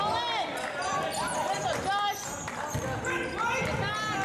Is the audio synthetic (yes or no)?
no